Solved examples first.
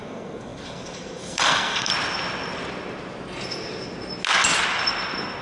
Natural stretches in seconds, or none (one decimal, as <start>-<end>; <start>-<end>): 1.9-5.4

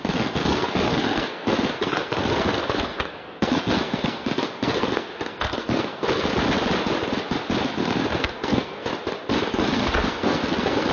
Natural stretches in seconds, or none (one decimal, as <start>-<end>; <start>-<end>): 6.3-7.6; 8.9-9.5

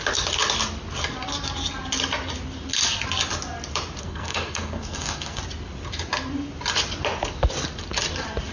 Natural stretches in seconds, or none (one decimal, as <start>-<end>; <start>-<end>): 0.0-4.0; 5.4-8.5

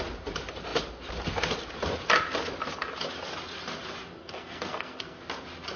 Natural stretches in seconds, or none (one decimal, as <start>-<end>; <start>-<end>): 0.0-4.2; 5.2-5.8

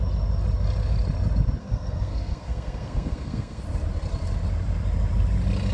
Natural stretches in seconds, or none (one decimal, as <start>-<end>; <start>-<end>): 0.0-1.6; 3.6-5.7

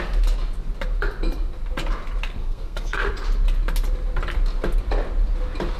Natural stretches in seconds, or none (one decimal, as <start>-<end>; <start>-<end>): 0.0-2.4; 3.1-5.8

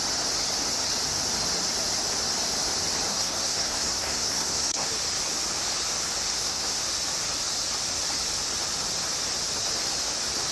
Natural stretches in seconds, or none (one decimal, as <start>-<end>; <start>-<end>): 0.0-3.1; 4.9-6.3; 6.8-10.5

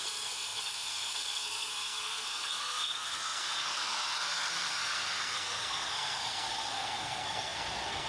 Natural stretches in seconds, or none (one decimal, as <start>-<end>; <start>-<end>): none